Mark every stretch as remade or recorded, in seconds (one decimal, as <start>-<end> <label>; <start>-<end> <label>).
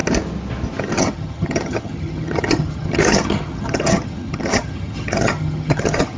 0.0-0.8 recorded; 0.8-6.2 remade